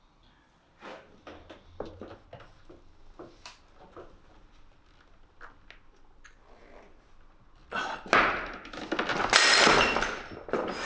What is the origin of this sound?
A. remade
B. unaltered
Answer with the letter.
B